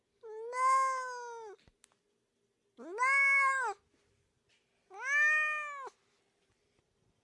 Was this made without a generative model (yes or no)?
yes